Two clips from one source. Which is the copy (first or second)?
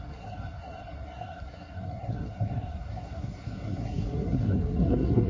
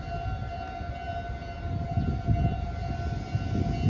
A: first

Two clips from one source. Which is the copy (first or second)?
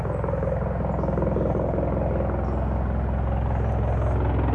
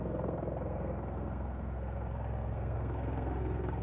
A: second